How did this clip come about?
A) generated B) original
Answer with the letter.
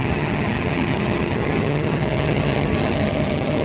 A